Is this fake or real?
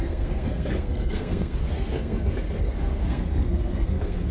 fake